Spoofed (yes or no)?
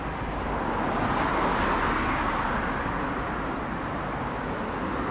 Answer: no